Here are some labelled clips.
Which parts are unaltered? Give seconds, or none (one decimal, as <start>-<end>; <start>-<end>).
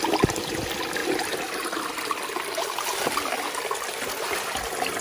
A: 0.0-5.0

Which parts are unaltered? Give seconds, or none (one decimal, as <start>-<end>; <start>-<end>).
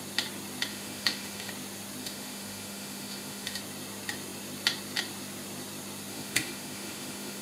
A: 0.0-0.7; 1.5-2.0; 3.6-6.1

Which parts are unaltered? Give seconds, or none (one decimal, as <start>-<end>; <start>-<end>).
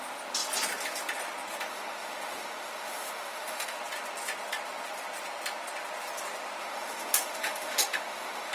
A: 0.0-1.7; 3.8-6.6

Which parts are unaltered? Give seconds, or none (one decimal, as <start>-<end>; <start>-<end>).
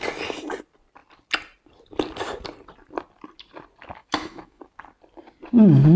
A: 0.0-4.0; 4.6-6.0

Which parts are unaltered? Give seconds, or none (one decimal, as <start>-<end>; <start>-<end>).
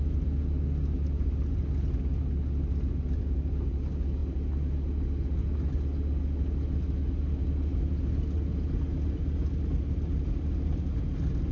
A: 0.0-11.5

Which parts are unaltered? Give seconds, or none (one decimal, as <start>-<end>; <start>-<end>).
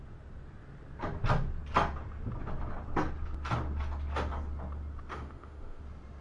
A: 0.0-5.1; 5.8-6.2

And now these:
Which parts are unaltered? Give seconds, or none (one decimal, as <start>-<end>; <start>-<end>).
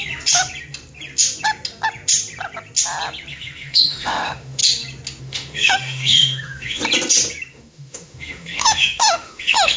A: 0.0-3.3; 4.6-5.2; 6.8-7.5